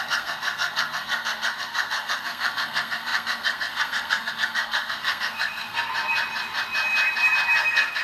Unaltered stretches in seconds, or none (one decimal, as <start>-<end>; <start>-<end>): 5.9-7.6